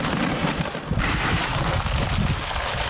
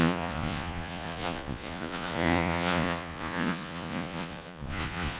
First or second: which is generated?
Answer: second